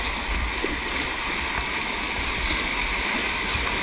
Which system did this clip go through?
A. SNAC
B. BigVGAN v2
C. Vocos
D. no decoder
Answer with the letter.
D